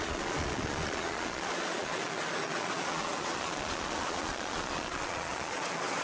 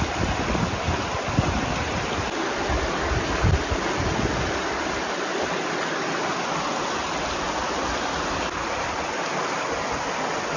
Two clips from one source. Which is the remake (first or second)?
first